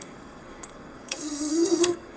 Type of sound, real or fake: fake